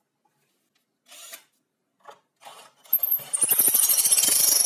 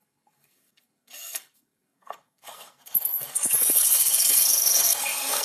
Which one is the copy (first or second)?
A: second